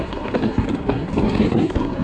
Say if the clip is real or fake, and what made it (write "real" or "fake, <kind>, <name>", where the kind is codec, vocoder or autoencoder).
fake, codec, SNAC